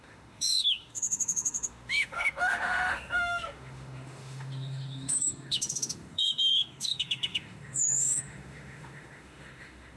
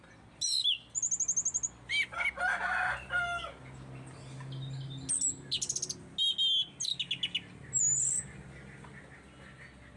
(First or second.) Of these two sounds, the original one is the second